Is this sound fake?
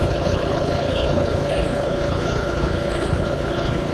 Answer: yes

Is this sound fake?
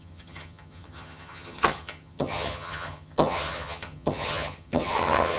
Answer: yes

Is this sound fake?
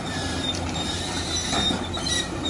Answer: yes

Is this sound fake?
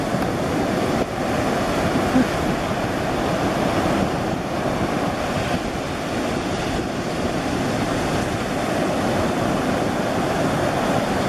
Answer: no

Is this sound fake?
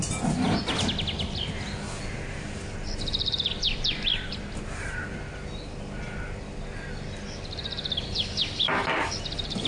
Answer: no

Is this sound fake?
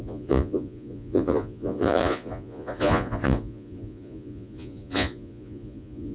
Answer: yes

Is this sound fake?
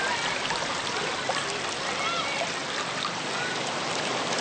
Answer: no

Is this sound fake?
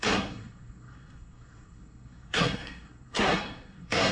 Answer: yes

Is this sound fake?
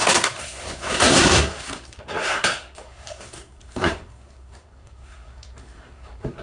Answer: yes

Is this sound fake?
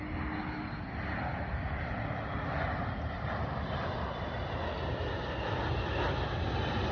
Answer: no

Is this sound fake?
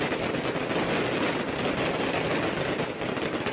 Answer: no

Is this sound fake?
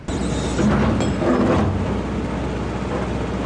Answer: no